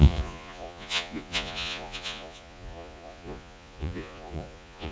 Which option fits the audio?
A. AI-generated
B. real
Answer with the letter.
A